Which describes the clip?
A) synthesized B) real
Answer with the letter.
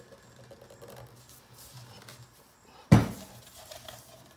B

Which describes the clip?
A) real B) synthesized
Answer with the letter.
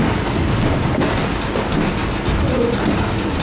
A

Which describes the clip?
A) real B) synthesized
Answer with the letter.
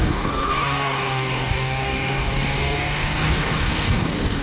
B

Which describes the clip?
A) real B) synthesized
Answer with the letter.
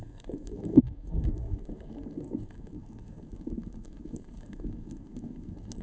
B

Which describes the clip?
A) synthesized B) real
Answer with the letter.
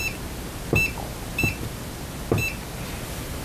B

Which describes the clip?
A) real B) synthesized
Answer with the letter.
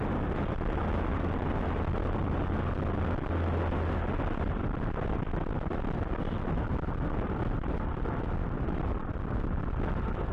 A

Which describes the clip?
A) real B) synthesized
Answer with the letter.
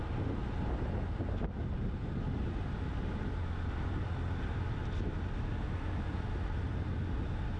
A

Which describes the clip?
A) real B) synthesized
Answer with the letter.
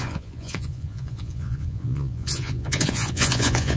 B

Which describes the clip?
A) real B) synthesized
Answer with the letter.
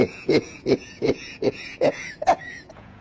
B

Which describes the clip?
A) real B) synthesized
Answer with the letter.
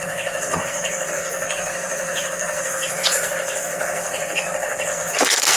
B